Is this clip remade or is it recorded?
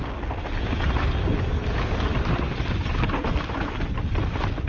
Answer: recorded